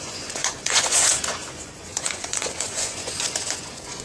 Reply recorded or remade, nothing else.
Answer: remade